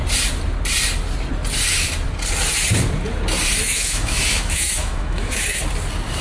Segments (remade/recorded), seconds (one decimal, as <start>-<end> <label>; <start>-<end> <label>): 0.0-3.6 recorded; 3.6-5.6 remade; 5.6-6.2 recorded